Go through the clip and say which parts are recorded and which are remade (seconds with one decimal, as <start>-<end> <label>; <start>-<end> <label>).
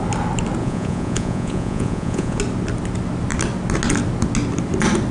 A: 0.0-0.6 recorded; 0.6-2.4 remade; 2.4-5.1 recorded